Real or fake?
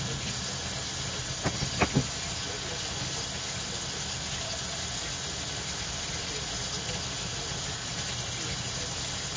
real